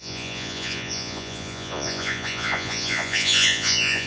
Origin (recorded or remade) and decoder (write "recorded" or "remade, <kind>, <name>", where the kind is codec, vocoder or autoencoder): remade, vocoder, Vocos